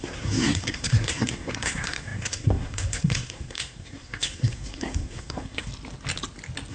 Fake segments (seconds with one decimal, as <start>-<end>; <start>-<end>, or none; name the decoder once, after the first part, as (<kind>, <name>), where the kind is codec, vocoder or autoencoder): 0.0-5.7 (codec, SNAC)